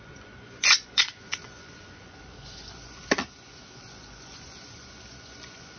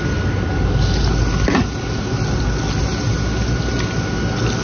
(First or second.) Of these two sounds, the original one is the second